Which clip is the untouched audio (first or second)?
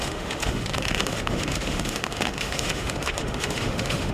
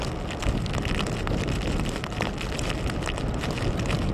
second